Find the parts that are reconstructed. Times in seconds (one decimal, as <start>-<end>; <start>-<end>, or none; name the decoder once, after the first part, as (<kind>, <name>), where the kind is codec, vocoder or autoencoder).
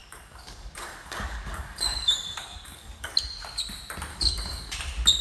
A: 0.0-3.1 (codec, DAC); 4.1-4.8